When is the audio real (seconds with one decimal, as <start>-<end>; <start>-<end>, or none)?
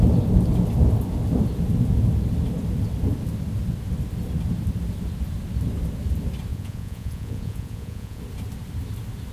0.0-6.5; 8.2-9.3